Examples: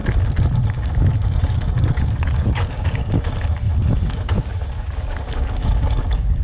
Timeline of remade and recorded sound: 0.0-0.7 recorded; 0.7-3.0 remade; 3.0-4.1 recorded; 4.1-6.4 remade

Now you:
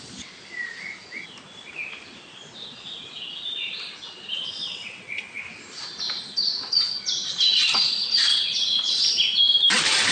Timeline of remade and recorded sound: 0.0-4.4 recorded; 4.4-5.4 remade; 5.4-8.3 recorded; 8.3-9.0 remade; 9.0-10.1 recorded

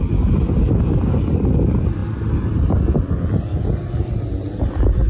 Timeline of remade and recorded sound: 0.0-5.1 recorded

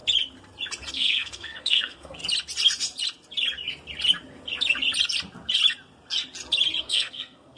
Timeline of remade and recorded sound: 0.0-0.9 recorded; 0.9-2.2 remade; 2.2-6.8 recorded; 6.8-7.6 remade